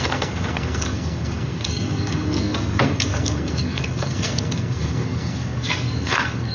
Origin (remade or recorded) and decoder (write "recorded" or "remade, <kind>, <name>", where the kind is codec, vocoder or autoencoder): remade, codec, SNAC